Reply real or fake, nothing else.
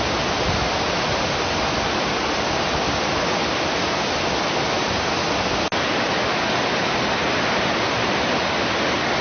real